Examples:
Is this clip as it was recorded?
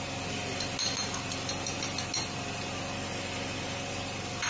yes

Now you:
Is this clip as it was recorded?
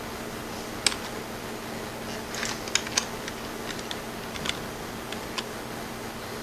yes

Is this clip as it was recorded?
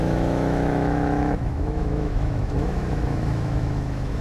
no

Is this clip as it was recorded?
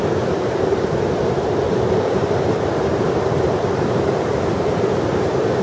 no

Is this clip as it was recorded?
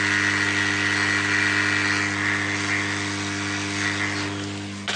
yes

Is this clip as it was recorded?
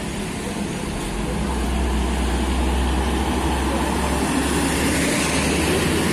yes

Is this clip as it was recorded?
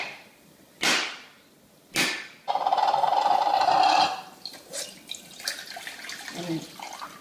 yes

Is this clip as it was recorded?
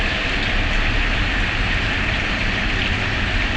yes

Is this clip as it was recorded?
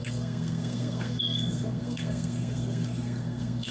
no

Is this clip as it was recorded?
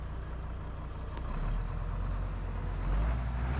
yes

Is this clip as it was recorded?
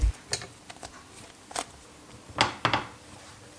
yes